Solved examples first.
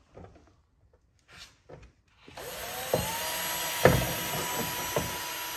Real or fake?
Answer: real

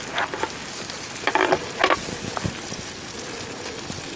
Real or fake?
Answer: real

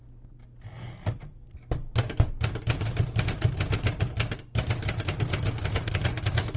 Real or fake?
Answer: real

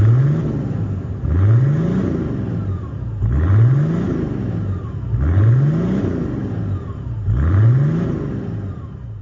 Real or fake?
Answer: real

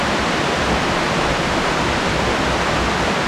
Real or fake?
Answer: real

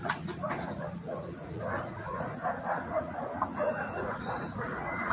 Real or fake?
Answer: fake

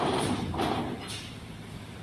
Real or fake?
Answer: fake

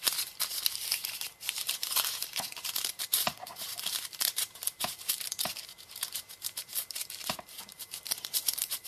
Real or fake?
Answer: fake